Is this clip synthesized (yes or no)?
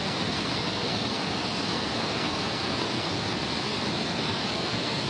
yes